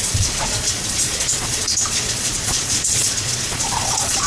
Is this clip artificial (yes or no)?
yes